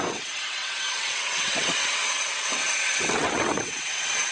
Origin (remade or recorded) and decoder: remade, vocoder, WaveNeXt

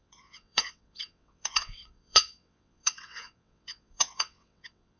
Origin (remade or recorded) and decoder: remade, vocoder, WaveNeXt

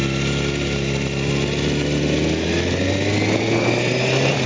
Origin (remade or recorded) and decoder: recorded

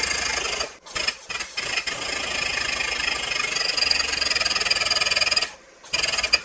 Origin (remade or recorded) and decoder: recorded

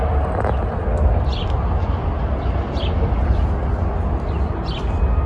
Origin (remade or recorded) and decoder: recorded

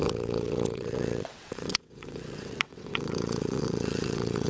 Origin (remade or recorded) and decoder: remade, vocoder, WaveNeXt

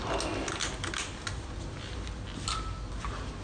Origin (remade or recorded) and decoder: recorded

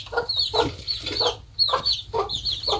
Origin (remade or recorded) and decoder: recorded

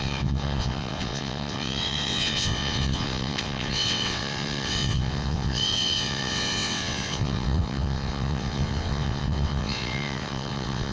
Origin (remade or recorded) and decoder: remade, vocoder, WaveNeXt